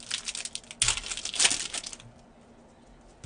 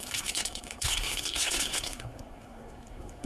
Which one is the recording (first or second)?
first